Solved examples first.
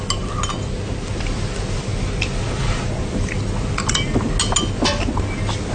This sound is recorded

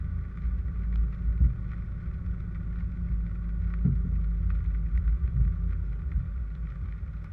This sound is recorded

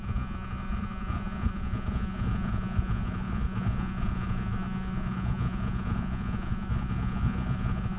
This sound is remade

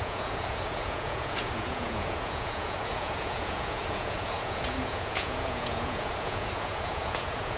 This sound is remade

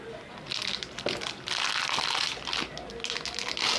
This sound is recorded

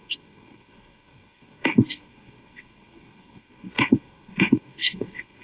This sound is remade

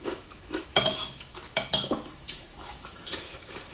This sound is remade